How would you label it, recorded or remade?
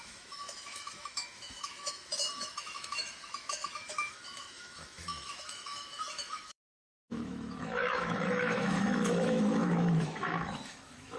remade